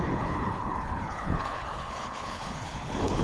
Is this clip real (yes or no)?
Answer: no